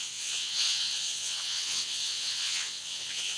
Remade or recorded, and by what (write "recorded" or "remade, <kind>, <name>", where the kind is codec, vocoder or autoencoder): remade, vocoder, WaveNeXt